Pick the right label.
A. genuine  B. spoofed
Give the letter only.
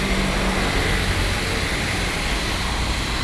A